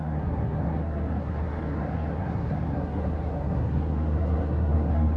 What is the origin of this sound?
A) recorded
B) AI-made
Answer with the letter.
B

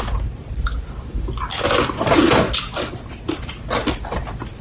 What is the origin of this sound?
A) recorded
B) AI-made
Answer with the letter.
A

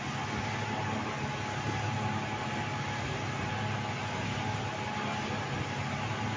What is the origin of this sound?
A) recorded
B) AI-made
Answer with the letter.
A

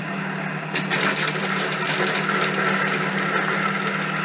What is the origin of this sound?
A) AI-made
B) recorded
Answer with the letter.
B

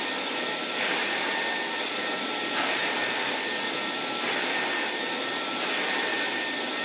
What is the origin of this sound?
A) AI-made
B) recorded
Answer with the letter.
A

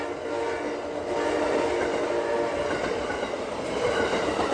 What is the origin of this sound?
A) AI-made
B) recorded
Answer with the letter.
B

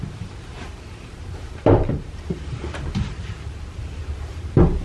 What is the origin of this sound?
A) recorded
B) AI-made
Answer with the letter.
B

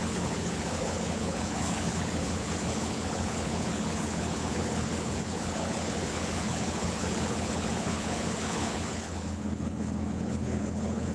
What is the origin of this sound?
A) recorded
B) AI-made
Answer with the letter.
B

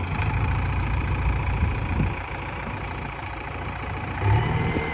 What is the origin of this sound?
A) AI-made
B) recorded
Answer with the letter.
A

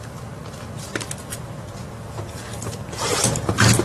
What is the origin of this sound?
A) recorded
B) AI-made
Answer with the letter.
A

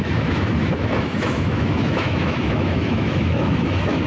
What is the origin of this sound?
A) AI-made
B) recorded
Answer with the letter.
A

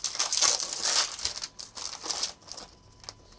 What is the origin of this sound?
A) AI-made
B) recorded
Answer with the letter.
B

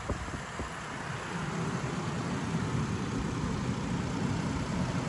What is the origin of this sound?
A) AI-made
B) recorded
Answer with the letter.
B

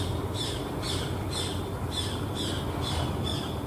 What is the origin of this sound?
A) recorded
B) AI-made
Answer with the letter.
A